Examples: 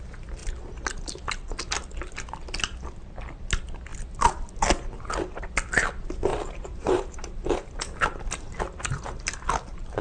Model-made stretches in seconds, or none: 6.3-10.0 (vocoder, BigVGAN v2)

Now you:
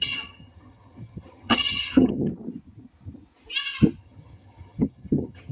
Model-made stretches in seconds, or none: 0.0-2.3 (vocoder, HiFi-GAN); 4.0-5.5

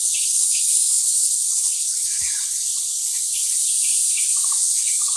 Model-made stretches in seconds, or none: 0.0-3.6 (codec, HILCodec); 4.6-5.2

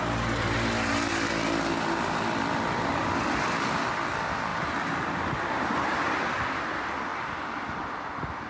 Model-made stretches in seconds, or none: 0.0-4.5 (vocoder, BigVGAN v2); 5.5-8.5